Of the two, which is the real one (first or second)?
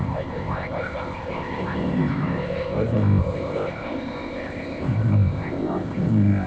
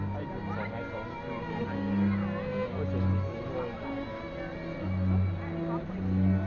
second